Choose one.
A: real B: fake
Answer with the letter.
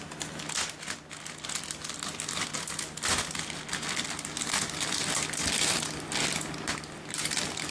A